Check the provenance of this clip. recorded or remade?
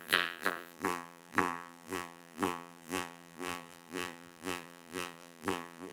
remade